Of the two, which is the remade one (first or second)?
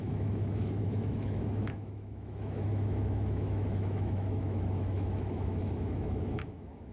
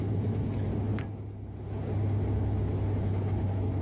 first